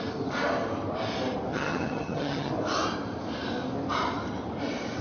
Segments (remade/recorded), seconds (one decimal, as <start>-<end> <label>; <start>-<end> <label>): 0.0-1.5 recorded; 1.5-2.5 remade; 2.5-5.0 recorded